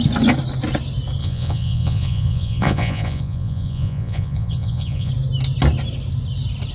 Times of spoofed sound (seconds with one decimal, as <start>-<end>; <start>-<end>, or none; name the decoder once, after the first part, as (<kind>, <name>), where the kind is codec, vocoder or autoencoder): 1.2-5.1 (vocoder, Vocos)